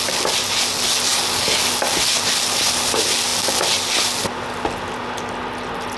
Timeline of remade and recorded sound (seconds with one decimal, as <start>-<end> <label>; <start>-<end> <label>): 0.0-6.0 recorded